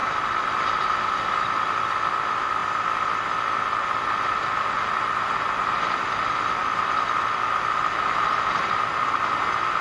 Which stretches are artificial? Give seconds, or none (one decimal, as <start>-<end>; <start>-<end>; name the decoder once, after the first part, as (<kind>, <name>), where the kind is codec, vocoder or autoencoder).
0.0-0.8 (vocoder, BigVGAN v2)